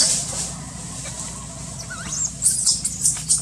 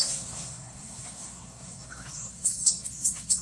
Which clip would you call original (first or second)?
first